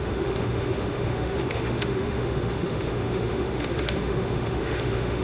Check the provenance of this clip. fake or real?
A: fake